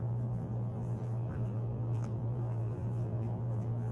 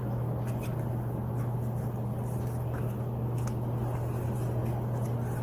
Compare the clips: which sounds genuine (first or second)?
second